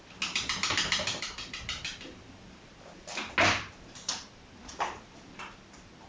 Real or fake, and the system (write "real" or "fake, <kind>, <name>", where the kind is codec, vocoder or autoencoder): real